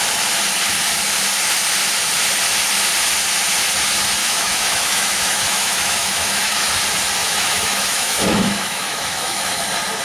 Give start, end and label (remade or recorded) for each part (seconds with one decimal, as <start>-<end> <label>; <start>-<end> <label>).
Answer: 0.0-4.2 recorded; 4.2-6.7 remade; 6.7-7.2 recorded; 7.2-9.6 remade; 9.6-10.0 recorded